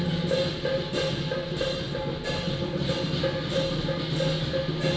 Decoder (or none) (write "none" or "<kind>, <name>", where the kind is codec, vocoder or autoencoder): none